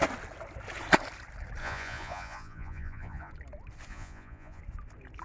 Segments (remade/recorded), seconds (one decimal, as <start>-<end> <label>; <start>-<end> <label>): 0.0-1.6 recorded; 1.6-3.3 remade; 3.3-3.9 recorded; 3.9-4.6 remade; 4.6-5.2 recorded